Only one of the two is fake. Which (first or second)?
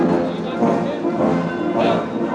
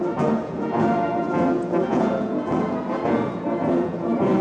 second